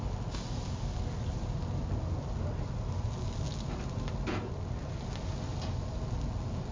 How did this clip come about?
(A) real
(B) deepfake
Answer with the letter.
A